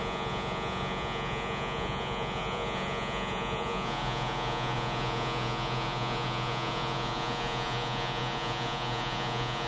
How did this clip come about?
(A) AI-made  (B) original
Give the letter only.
A